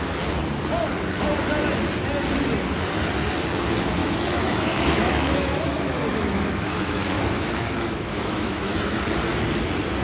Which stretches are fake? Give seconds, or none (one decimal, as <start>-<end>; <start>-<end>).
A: 4.0-9.0